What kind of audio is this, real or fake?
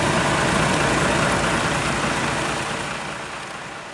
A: real